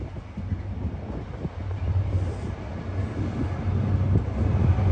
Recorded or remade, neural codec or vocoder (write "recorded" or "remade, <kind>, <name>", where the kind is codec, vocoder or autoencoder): recorded